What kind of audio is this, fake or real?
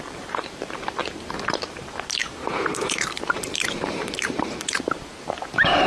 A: fake